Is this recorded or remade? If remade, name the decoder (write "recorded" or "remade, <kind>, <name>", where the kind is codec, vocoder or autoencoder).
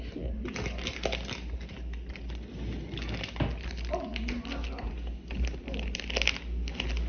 recorded